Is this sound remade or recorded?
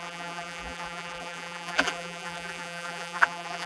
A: remade